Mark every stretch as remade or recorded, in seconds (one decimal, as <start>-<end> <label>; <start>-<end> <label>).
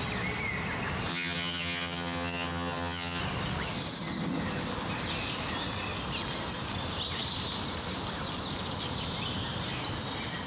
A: 0.0-1.1 recorded; 1.1-3.2 remade; 3.2-10.5 recorded